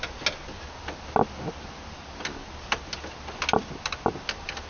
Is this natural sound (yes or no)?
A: yes